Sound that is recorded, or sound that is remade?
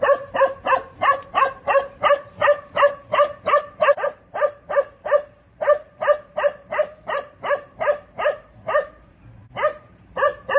remade